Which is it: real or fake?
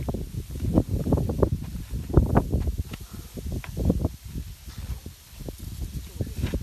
real